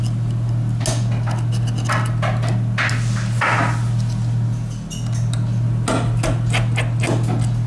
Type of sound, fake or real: real